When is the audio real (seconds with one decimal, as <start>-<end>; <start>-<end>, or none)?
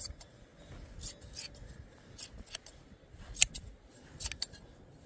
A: 0.0-5.1